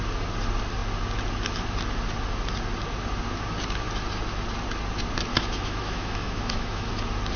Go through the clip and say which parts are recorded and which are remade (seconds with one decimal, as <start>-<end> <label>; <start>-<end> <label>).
0.0-5.3 recorded; 5.3-6.9 remade; 6.9-7.4 recorded